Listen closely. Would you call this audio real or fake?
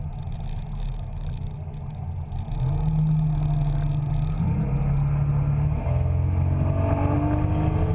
real